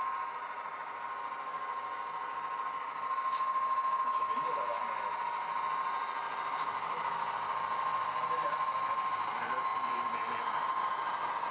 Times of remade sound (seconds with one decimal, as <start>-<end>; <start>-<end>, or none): 9.7-10.3